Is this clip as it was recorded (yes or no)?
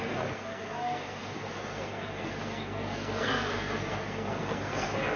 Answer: no